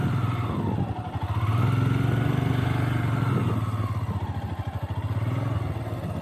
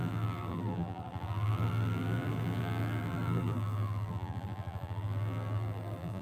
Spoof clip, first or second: second